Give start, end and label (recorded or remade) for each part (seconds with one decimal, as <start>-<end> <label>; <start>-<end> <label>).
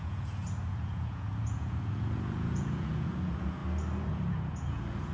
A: 0.0-3.6 remade; 3.6-4.1 recorded; 4.1-5.1 remade